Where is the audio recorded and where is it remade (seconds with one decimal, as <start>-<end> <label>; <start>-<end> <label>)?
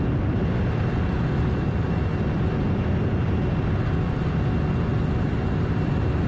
0.0-6.3 recorded